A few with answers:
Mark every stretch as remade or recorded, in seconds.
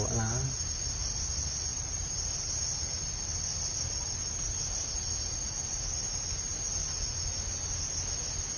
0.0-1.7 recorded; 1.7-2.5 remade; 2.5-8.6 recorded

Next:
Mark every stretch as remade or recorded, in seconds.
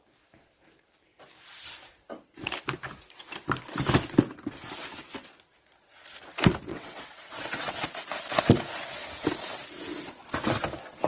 0.0-6.7 recorded; 6.7-8.0 remade; 8.0-11.1 recorded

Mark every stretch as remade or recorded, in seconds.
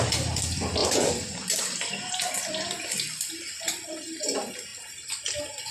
0.0-0.8 recorded; 0.8-4.2 remade; 4.2-4.7 recorded; 4.7-5.7 remade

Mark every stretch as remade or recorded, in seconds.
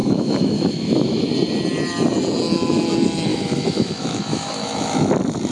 0.0-1.3 remade; 1.3-3.3 recorded; 3.3-5.1 remade; 5.1-5.5 recorded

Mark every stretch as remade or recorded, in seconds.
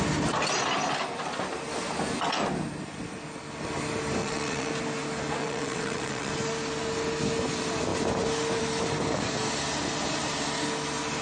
0.0-4.2 recorded; 4.2-4.7 remade; 4.7-5.4 recorded; 5.4-6.3 remade; 6.3-11.2 recorded